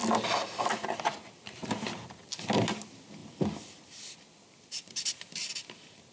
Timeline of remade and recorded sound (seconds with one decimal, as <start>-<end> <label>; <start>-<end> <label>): 0.0-1.6 recorded; 1.6-2.4 remade; 2.4-3.2 recorded; 3.2-5.5 remade; 5.5-6.1 recorded